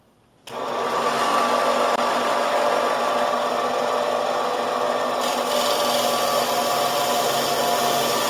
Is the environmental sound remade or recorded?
recorded